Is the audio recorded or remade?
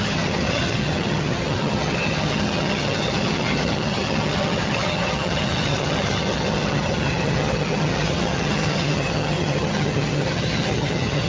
remade